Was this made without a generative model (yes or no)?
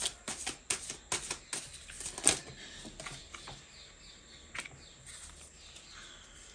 yes